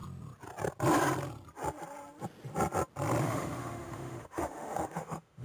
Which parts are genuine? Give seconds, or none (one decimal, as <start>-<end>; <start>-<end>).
0.0-3.2